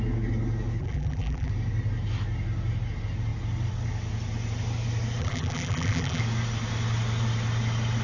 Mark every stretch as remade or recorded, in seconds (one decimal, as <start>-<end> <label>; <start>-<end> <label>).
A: 0.0-0.8 recorded; 0.8-1.5 remade; 1.5-5.2 recorded; 5.2-6.2 remade; 6.2-8.0 recorded

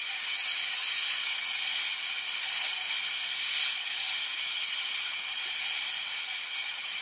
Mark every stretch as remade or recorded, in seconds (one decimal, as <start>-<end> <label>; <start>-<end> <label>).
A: 0.0-1.6 remade; 1.6-2.4 recorded; 2.4-2.8 remade; 2.8-3.8 recorded; 3.8-5.4 remade; 5.4-6.2 recorded; 6.2-7.0 remade